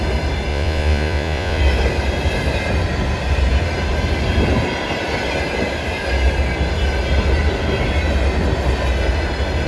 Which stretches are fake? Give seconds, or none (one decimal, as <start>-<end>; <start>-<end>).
0.5-1.6